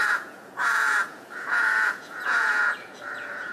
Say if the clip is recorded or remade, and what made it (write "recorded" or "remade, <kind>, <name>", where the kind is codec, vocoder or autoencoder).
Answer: remade, vocoder, Vocos